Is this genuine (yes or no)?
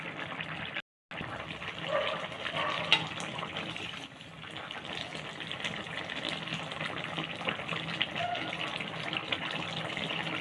yes